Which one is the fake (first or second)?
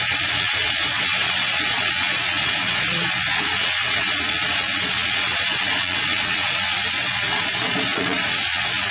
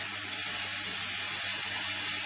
first